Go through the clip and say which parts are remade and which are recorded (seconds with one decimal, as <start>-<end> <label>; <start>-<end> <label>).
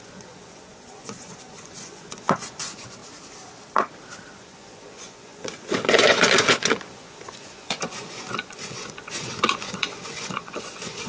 0.0-3.0 remade; 3.0-4.3 recorded; 4.3-11.1 remade